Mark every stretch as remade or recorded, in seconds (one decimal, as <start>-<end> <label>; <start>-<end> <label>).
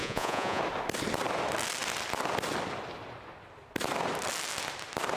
0.0-0.6 remade; 0.6-5.2 recorded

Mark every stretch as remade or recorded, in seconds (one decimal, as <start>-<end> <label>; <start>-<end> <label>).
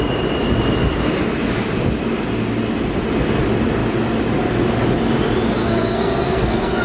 0.0-5.6 recorded; 5.6-6.8 remade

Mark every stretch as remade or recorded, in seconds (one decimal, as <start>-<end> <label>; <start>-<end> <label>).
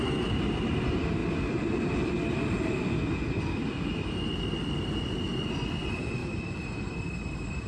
0.0-6.2 recorded; 6.2-7.7 remade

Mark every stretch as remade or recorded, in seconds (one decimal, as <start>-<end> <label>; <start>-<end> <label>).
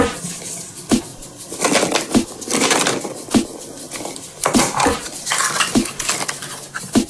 0.0-7.1 recorded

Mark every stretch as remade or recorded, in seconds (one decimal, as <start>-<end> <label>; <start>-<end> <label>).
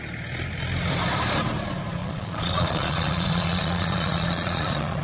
0.0-2.0 recorded; 2.0-5.0 remade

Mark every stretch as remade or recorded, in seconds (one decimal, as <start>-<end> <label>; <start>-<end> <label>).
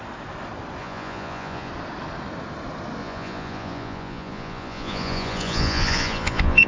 0.0-0.8 recorded; 0.8-1.7 remade; 1.7-3.0 recorded; 3.0-6.7 remade